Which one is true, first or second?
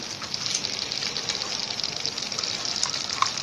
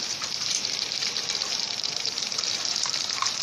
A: first